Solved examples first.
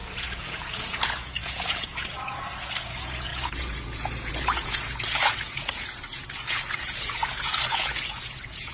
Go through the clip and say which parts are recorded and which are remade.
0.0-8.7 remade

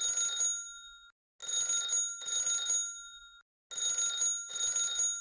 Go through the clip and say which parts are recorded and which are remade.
0.0-5.2 recorded

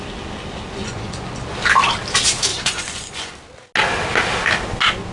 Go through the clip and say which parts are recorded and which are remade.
0.0-0.8 recorded; 0.8-1.4 remade; 1.4-2.5 recorded; 2.5-3.3 remade; 3.3-5.1 recorded

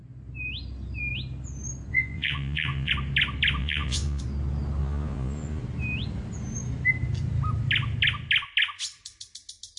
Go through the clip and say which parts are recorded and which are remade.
0.0-1.9 recorded; 1.9-2.9 remade; 2.9-3.6 recorded; 3.6-4.2 remade; 4.2-4.8 recorded; 4.8-5.6 remade; 5.6-9.8 recorded

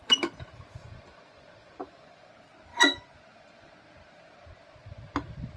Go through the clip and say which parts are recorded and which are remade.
0.0-0.8 recorded; 0.8-2.3 remade; 2.3-2.7 recorded; 2.7-3.7 remade; 3.7-5.6 recorded

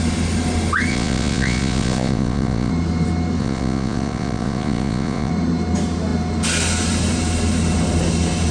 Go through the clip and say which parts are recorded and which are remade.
0.0-0.9 recorded; 0.9-2.7 remade; 2.7-3.4 recorded; 3.4-5.3 remade; 5.3-8.5 recorded

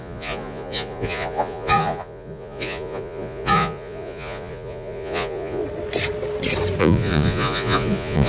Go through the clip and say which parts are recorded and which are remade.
0.0-5.6 remade; 5.6-6.8 recorded; 6.8-8.3 remade